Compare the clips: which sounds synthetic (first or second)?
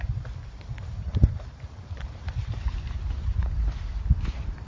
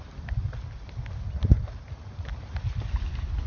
first